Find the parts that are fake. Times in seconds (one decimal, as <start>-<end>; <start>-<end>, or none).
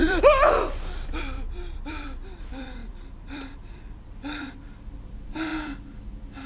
0.0-6.5